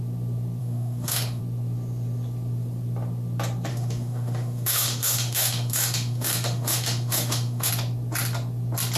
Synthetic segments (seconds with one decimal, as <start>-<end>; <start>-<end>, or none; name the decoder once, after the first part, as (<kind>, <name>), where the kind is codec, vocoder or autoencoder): 0.6-1.4 (autoencoder, DAC-VAE); 3.7-7.7